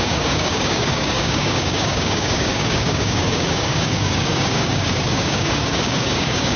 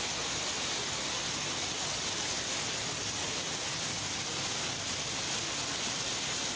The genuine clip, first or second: second